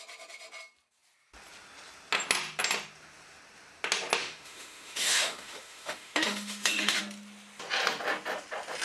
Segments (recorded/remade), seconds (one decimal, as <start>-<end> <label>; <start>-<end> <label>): 0.0-4.2 recorded; 4.2-7.0 remade; 7.0-8.8 recorded